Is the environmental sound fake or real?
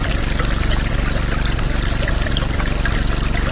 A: fake